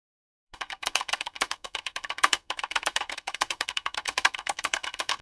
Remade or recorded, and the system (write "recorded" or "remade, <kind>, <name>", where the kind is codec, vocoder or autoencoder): remade, codec, SNAC